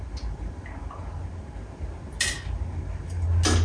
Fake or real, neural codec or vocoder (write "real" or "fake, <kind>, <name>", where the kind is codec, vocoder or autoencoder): real